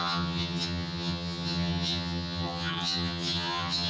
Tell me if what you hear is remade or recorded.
remade